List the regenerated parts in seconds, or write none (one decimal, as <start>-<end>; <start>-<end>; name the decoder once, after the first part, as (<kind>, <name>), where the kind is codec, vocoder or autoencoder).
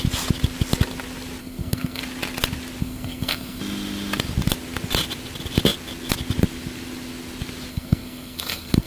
1.4-2.0 (codec, SNAC); 2.8-3.6; 7.7-8.9